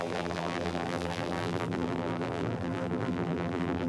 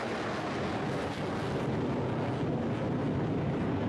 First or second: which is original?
second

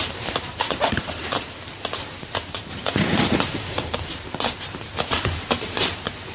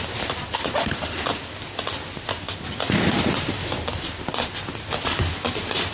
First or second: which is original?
second